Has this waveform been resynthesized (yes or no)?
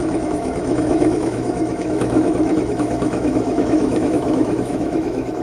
yes